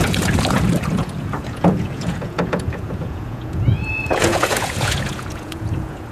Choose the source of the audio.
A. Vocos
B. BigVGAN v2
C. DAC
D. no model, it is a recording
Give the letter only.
A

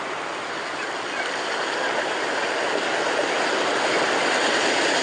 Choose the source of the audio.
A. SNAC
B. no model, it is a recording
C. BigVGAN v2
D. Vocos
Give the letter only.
B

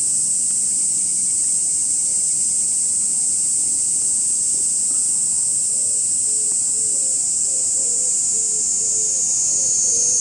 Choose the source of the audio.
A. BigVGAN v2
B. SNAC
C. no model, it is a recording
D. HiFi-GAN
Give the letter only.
C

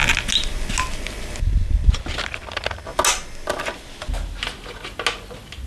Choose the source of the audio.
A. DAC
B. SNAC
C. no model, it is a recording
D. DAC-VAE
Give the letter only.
C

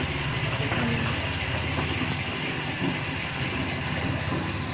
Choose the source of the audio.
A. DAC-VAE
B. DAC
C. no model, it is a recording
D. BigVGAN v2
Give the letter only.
C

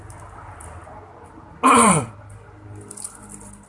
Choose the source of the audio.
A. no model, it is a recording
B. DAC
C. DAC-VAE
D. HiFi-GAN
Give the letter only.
A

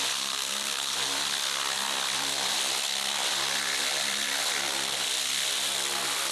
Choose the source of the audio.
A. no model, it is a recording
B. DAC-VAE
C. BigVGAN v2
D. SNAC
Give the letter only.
C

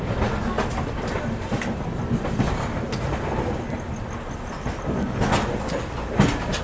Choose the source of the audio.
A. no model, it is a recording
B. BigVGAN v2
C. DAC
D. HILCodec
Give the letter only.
A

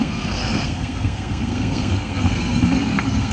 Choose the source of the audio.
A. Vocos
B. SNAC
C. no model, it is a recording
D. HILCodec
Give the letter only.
B